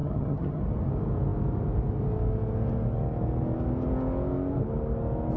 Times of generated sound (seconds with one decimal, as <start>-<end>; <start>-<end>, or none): 0.0-0.6